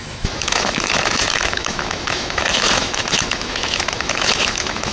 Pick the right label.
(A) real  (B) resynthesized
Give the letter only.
B